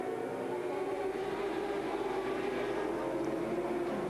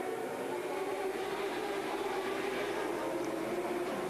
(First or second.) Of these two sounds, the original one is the first